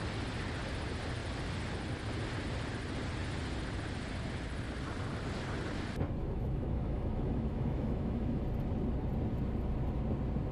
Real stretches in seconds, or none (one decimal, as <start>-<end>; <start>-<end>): 0.0-6.2; 8.4-10.5